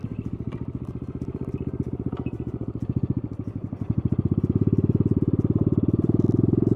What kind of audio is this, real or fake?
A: fake